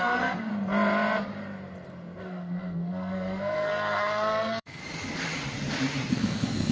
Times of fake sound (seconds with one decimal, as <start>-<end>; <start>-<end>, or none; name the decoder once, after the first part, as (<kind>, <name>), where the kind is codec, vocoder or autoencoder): 0.0-0.5 (codec, SNAC); 2.2-4.8; 6.1-6.7